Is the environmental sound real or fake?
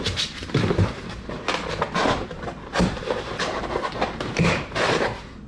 fake